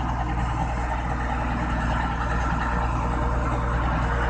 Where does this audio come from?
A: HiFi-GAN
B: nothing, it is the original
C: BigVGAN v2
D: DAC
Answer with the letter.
B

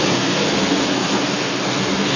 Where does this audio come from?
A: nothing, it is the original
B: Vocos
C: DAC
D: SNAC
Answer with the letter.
D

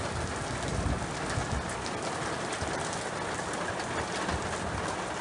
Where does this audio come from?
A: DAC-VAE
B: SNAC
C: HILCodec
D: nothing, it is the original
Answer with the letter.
D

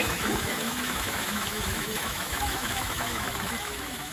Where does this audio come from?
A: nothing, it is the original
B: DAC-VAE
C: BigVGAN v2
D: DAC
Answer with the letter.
B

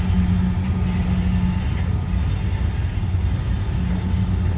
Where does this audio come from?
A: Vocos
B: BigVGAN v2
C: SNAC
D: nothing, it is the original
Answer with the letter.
D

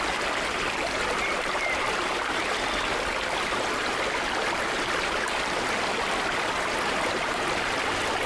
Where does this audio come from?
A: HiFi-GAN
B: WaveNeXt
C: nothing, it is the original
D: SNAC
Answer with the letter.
C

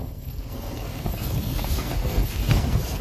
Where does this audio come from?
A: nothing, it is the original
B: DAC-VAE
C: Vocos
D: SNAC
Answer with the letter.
D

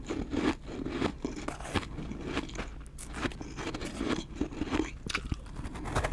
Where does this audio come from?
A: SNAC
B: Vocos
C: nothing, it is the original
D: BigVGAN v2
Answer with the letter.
C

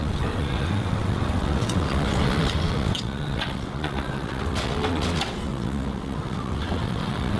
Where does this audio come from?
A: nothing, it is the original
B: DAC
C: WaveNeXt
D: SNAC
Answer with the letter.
C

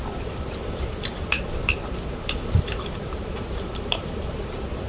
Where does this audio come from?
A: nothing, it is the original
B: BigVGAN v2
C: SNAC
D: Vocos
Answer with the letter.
B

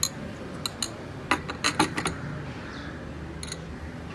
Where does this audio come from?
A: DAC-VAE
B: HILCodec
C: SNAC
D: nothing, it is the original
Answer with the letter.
D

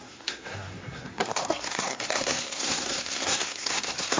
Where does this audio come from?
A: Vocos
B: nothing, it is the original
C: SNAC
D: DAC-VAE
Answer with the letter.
C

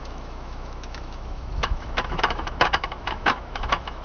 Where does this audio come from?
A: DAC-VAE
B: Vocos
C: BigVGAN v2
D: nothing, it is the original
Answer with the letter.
A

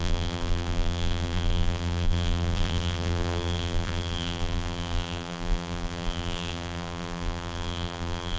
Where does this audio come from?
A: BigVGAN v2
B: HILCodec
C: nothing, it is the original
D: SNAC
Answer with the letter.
A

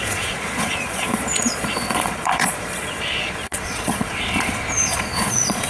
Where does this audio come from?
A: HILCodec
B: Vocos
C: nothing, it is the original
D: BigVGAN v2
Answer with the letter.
B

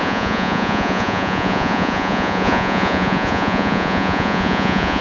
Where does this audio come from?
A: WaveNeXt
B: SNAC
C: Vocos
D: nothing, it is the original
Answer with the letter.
C